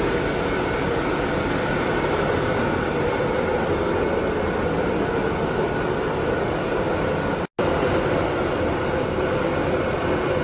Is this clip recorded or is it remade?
recorded